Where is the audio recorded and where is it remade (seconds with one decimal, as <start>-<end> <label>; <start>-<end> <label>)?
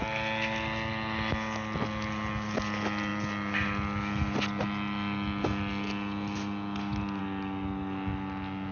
0.0-8.7 recorded